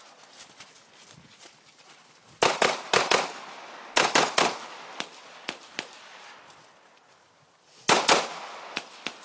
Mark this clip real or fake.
real